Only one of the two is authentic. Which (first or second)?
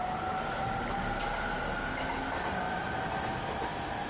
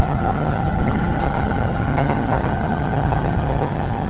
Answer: first